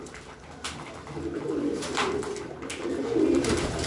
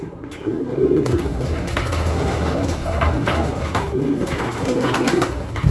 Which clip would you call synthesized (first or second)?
second